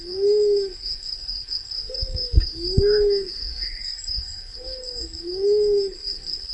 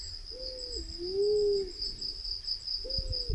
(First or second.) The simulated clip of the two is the first